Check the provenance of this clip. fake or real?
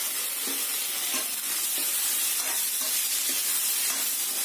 real